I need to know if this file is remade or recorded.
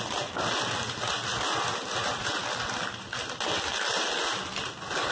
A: recorded